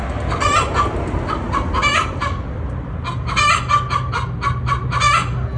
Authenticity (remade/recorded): recorded